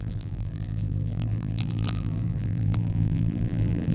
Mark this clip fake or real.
fake